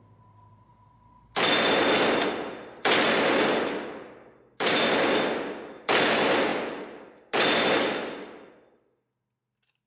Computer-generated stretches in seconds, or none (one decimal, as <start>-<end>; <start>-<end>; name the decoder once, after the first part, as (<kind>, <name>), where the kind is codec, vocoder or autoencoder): none